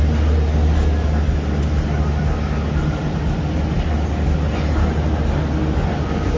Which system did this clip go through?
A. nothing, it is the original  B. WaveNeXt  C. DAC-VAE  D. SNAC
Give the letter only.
A